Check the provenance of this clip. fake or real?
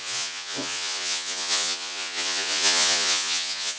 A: fake